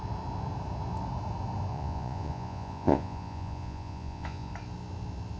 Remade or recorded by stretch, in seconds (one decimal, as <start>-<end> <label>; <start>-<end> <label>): 0.0-1.7 recorded; 1.7-4.5 remade; 4.5-5.4 recorded